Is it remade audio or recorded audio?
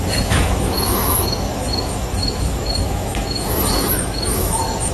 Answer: remade